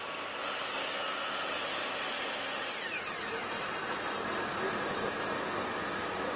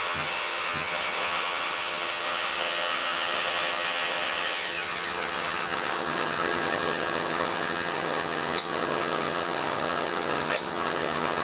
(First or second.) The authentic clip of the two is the first